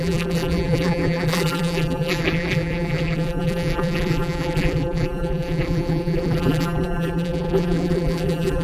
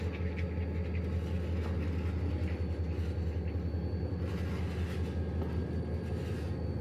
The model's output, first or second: first